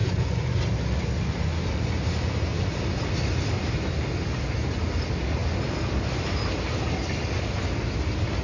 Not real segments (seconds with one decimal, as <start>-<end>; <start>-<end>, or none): 0.0-0.6